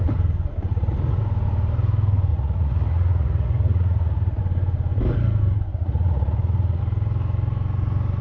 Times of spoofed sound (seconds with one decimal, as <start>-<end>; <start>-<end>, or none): 0.7-1.2; 2.3-4.4; 5.7-6.8